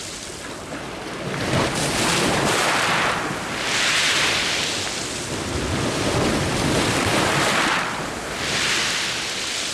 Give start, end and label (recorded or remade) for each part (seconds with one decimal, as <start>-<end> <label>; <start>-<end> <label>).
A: 0.0-9.7 recorded